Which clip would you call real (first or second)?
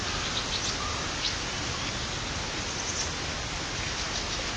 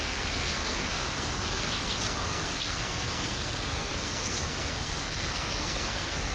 first